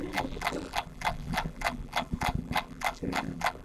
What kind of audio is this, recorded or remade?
remade